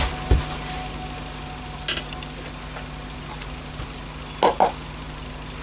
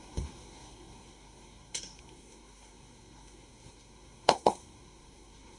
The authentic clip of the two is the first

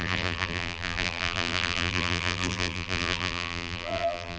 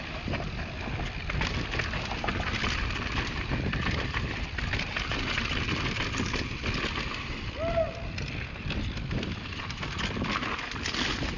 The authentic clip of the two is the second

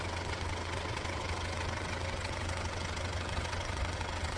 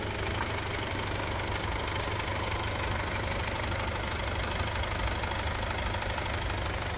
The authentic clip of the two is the second